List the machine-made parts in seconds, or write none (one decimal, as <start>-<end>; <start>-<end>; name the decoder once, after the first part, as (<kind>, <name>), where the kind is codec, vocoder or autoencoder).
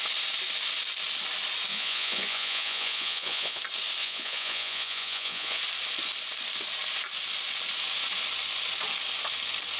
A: 1.7-3.6 (vocoder, Vocos); 4.0-5.6